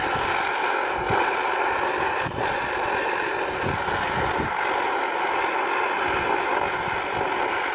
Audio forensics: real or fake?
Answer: real